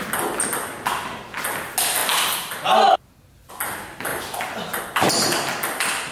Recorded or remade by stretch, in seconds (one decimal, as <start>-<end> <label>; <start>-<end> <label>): 0.0-4.1 recorded; 4.1-4.8 remade; 4.8-6.1 recorded